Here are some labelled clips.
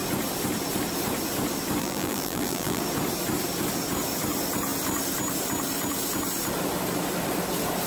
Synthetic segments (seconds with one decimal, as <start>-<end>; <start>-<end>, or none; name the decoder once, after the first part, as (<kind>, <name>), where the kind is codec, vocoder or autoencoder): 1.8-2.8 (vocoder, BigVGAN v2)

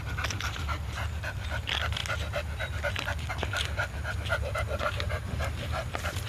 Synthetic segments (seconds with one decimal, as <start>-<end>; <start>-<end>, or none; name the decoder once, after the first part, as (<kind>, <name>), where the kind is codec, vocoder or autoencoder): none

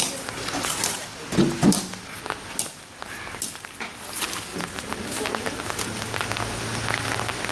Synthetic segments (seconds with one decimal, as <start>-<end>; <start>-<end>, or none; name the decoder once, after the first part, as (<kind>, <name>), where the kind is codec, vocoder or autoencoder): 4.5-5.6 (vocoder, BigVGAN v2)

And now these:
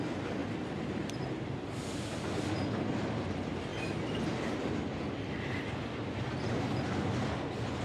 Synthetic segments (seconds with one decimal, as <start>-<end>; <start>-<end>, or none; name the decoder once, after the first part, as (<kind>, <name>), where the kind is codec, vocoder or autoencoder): none

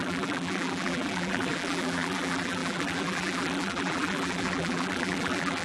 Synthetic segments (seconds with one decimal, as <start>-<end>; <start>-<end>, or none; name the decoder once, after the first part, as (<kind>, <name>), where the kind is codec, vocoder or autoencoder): 0.0-5.6 (vocoder, BigVGAN v2)

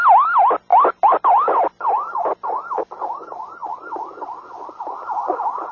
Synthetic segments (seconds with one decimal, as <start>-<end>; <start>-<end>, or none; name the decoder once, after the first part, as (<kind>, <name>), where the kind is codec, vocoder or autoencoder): 0.7-2.6 (vocoder, BigVGAN v2); 3.6-4.8